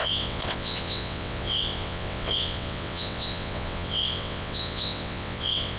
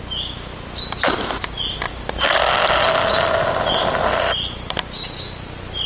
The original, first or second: second